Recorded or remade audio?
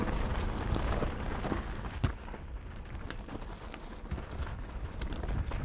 recorded